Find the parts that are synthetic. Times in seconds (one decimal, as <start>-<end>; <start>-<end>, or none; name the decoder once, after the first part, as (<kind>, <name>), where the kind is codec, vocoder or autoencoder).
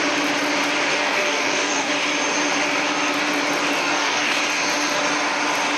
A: 0.9-1.9 (codec, DAC); 3.8-4.4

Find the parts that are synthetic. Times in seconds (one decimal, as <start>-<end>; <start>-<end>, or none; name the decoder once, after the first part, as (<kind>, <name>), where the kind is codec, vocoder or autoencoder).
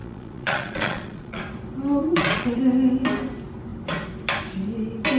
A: 0.0-1.4 (vocoder, Vocos); 2.0-2.6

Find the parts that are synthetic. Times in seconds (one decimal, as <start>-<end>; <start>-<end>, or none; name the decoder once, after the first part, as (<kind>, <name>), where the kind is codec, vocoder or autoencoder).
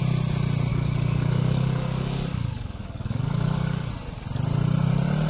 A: 0.7-3.9 (codec, DAC)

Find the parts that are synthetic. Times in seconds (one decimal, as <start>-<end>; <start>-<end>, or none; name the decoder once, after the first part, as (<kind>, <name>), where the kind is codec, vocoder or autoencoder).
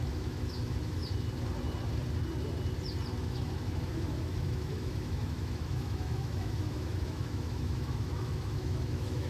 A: 0.0-1.0 (autoencoder, DAC-VAE); 3.2-9.3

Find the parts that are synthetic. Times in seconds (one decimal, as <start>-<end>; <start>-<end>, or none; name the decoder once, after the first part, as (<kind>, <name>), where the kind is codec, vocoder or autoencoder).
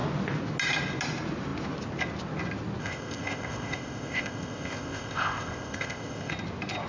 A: 2.8-6.3 (codec, ZipCodec)